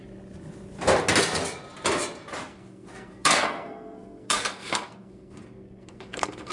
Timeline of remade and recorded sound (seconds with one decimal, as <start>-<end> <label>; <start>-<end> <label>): 0.0-2.4 recorded; 2.4-6.5 remade